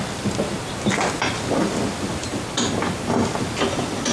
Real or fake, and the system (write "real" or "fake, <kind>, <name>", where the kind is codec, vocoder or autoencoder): real